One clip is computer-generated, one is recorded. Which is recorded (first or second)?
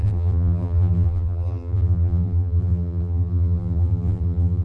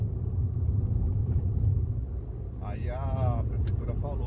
second